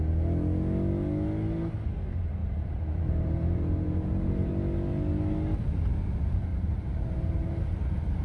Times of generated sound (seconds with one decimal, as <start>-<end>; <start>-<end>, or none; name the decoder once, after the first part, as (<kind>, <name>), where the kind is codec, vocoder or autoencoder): 2.4-4.5 (vocoder, BigVGAN v2); 6.5-7.5